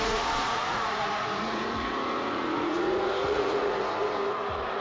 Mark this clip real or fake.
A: fake